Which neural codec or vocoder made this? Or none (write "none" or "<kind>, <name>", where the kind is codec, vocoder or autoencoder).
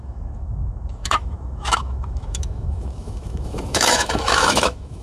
autoencoder, DAC-VAE